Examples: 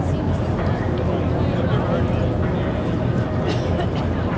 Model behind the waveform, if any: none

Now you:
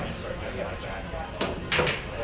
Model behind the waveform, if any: none